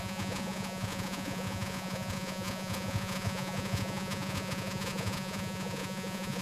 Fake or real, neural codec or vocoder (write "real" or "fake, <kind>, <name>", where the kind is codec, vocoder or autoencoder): fake, vocoder, Vocos